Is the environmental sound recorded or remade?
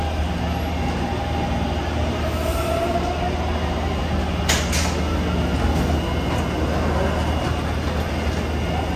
recorded